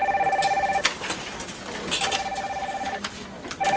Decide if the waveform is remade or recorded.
recorded